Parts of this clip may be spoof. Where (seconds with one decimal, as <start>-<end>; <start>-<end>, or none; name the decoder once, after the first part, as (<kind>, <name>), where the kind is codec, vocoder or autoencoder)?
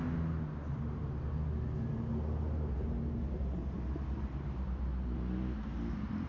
none